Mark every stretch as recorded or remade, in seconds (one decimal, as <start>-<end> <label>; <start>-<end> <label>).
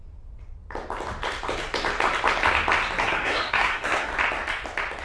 0.0-3.0 recorded; 3.0-4.1 remade; 4.1-5.0 recorded